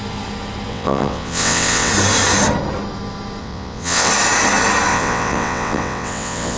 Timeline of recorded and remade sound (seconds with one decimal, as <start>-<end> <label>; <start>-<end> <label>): 0.0-0.7 recorded; 0.7-1.9 remade; 1.9-3.4 recorded; 3.4-4.1 remade; 4.1-4.9 recorded; 4.9-6.6 remade